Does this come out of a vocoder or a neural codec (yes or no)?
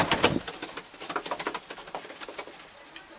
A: no